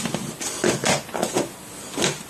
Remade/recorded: recorded